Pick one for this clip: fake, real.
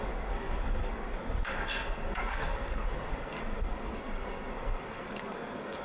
fake